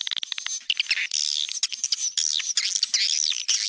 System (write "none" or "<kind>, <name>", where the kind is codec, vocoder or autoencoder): none